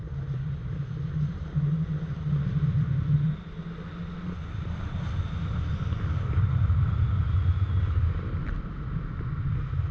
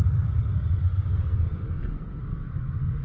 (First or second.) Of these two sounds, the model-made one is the second